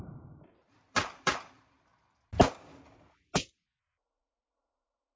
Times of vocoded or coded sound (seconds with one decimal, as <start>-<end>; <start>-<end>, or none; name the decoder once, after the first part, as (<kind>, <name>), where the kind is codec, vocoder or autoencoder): 0.0-1.9 (vocoder, BigVGAN v2); 4.2-5.2